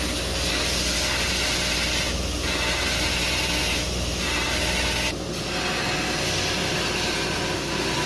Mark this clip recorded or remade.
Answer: recorded